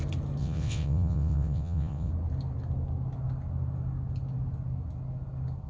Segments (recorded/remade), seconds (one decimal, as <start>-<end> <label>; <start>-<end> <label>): 0.0-0.4 recorded; 0.4-2.1 remade; 2.1-5.7 recorded